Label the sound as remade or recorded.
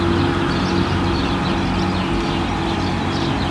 recorded